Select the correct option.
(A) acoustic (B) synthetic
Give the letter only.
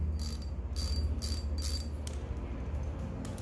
A